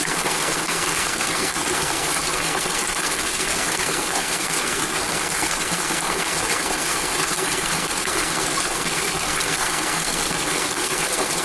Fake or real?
fake